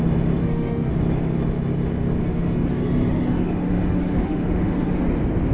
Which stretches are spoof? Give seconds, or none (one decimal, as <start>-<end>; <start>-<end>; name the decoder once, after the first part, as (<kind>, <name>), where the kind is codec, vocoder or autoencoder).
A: 0.4-0.9 (autoencoder, DAC-VAE); 2.2-5.0